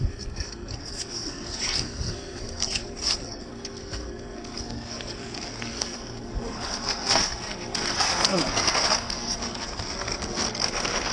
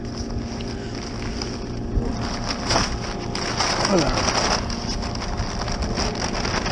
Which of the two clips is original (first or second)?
second